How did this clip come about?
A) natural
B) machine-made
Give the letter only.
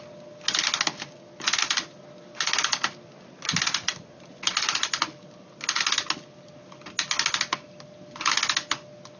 A